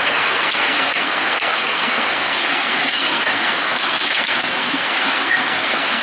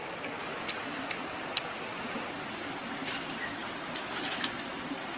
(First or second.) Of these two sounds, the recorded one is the second